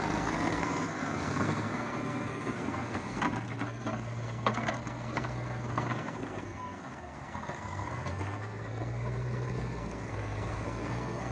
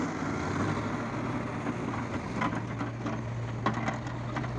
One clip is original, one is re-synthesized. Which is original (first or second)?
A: second